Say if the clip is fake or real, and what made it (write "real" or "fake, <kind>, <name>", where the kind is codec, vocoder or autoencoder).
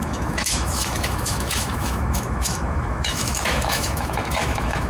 fake, autoencoder, DAC-VAE